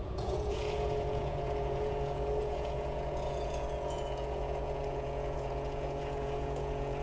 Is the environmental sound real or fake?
fake